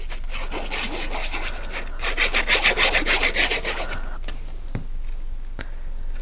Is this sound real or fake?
real